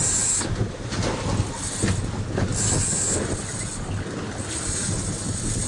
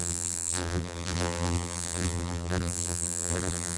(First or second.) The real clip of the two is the first